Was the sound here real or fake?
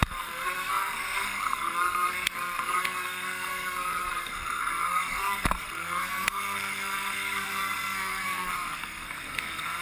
fake